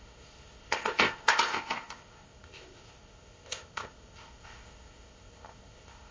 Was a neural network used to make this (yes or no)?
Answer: yes